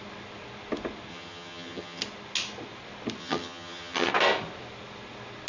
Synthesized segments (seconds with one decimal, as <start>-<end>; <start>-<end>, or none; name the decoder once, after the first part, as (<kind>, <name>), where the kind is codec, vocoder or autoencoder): 1.1-2.0 (vocoder, HiFi-GAN); 3.2-4.1